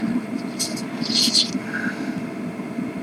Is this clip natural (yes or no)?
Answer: yes